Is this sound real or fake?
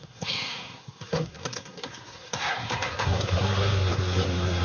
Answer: fake